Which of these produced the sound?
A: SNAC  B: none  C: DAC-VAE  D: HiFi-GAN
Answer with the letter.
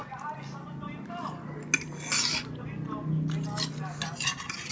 B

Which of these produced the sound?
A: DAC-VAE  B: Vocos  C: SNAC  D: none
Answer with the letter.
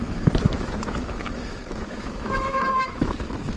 A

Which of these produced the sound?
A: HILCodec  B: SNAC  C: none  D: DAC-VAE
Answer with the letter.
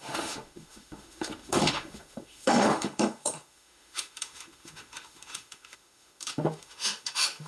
D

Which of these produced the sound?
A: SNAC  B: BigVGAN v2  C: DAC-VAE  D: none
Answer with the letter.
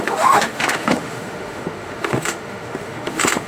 C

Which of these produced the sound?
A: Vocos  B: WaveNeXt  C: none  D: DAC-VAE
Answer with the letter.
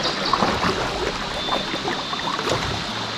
C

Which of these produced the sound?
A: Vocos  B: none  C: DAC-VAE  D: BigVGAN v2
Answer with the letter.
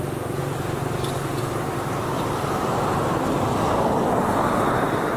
B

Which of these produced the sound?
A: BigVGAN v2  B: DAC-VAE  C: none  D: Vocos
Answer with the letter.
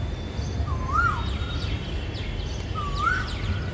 C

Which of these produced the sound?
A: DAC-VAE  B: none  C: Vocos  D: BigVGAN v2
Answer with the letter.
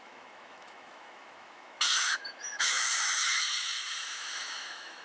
A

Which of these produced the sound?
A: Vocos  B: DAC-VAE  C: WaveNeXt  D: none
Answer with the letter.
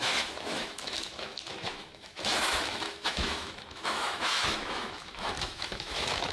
B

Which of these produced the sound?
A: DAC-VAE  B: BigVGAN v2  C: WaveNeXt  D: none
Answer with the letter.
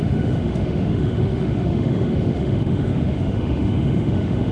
A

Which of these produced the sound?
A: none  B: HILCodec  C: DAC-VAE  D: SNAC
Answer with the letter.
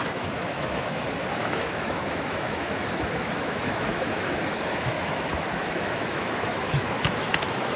C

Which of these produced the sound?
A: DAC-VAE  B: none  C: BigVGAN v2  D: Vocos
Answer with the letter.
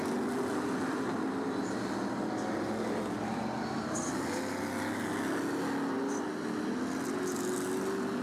B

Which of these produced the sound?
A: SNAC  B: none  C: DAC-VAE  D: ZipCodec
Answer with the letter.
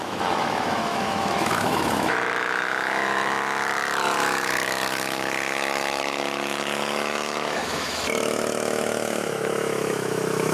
C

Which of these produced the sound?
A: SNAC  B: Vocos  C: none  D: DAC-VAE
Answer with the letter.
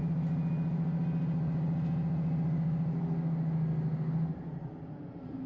C